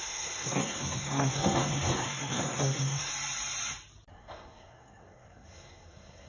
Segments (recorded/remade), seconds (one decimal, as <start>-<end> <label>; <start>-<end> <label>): 0.0-3.1 remade; 3.1-4.1 recorded; 4.1-6.3 remade